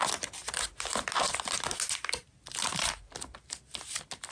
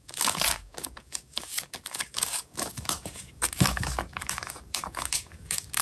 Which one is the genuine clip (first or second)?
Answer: first